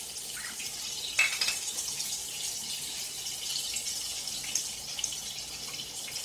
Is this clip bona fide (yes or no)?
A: yes